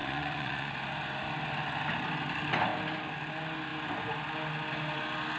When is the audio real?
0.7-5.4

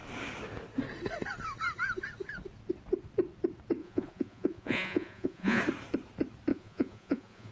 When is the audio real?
0.0-3.8; 5.6-6.5